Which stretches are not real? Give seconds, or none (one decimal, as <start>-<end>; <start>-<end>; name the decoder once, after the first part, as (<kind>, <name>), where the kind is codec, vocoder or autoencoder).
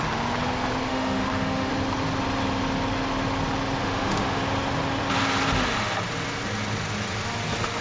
0.9-1.7 (autoencoder, DAC-VAE); 3.8-4.4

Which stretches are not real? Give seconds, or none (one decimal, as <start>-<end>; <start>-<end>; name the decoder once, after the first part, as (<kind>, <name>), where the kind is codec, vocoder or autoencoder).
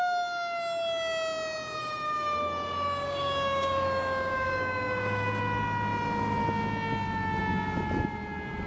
1.8-5.4 (codec, DAC)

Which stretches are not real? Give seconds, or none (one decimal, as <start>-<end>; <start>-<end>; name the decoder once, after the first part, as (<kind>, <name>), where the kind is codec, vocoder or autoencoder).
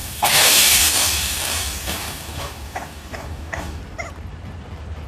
0.0-3.8 (codec, DAC)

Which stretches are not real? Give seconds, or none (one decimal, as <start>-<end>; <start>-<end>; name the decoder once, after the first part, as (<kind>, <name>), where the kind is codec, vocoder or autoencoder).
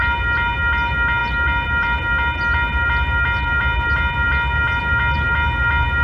none